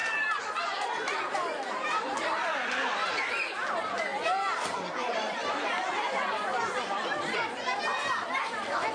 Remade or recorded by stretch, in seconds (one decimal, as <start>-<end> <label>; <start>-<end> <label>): 0.0-3.1 remade; 3.1-4.1 recorded; 4.1-8.9 remade